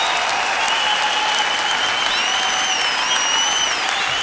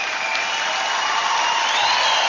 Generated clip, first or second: second